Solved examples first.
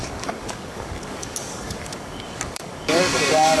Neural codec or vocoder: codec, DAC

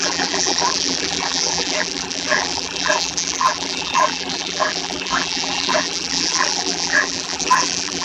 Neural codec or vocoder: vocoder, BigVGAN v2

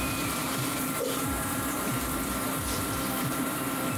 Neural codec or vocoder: vocoder, BigVGAN v2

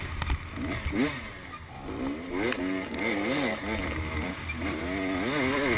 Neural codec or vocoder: none